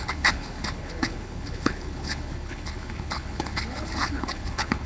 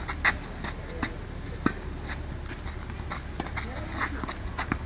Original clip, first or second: second